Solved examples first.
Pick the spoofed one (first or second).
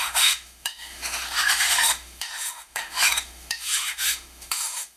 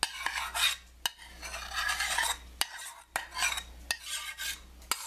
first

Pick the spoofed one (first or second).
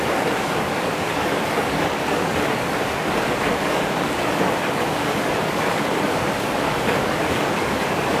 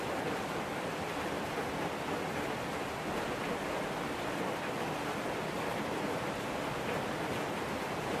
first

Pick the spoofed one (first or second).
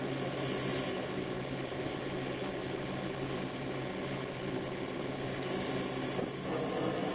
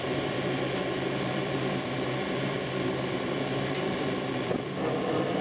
second